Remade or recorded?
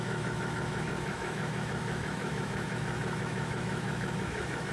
remade